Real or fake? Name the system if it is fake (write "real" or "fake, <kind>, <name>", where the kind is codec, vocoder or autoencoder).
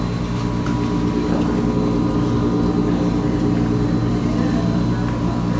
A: real